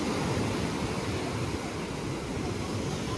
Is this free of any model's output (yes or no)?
yes